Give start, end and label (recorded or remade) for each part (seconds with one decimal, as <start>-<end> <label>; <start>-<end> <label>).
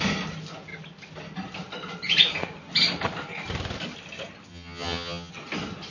0.0-4.5 recorded; 4.5-5.3 remade; 5.3-5.9 recorded